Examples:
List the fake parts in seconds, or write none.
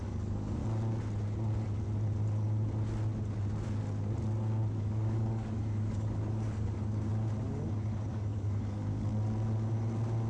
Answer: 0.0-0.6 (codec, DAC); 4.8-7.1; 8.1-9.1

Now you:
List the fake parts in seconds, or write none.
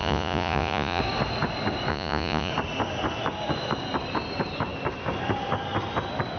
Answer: 0.0-1.0 (vocoder, Vocos); 1.9-2.5